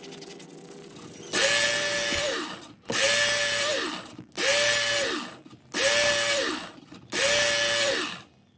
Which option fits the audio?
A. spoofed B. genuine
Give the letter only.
B